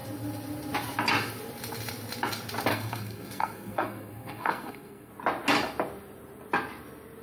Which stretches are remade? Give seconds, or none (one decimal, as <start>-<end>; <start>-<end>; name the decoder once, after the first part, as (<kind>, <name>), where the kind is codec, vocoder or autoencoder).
2.7-5.1 (codec, SNAC)